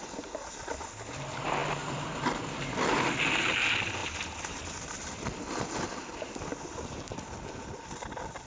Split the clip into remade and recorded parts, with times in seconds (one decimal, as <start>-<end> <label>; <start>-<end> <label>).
0.0-8.5 recorded